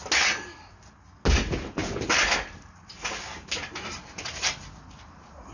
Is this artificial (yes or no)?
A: no